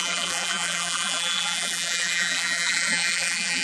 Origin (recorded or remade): remade